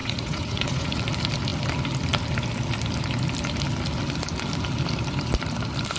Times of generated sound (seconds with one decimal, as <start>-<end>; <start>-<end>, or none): 0.0-1.0